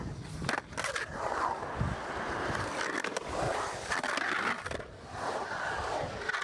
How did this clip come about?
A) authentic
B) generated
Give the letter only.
A